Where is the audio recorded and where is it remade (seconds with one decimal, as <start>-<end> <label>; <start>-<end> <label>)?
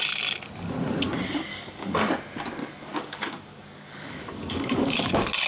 0.0-1.5 recorded; 1.5-2.1 remade; 2.1-2.6 recorded; 2.6-5.1 remade; 5.1-5.5 recorded